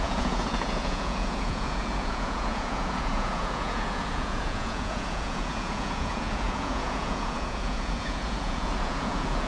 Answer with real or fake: fake